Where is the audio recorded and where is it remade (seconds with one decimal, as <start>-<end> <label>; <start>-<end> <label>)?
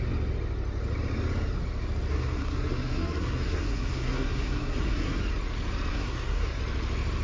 0.0-2.1 recorded; 2.1-5.2 remade; 5.2-5.9 recorded; 5.9-6.6 remade; 6.6-7.2 recorded